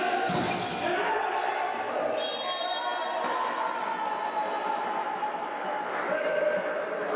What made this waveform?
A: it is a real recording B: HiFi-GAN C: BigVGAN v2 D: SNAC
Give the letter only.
A